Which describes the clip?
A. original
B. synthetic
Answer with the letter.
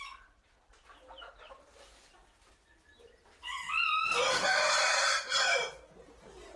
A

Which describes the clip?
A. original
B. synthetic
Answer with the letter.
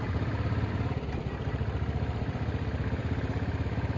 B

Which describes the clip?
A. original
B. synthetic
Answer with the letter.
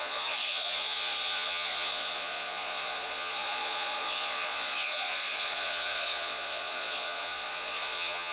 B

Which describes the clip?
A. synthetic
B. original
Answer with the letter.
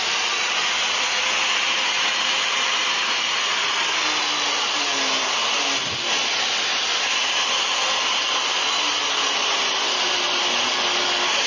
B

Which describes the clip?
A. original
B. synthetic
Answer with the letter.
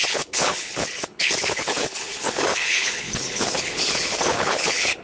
B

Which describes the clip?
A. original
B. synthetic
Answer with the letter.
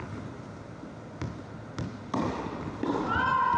A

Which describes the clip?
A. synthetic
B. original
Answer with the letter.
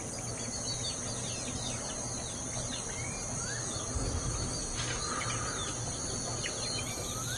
B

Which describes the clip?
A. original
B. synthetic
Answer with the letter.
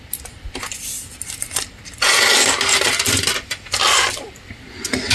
A